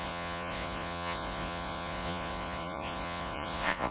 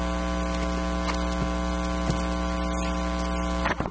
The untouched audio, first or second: second